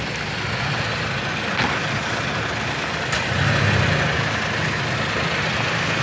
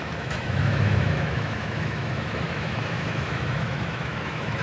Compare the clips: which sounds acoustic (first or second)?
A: first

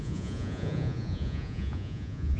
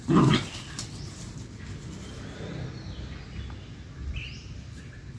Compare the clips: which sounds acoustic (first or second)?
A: second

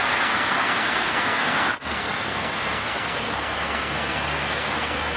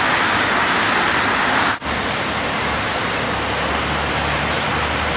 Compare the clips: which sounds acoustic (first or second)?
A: second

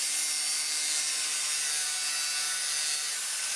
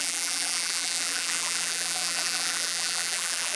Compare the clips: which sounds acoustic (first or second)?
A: first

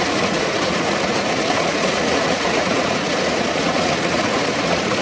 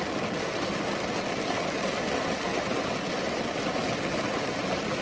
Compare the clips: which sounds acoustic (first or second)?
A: second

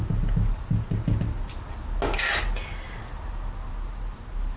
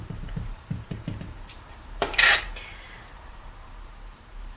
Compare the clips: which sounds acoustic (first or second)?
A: first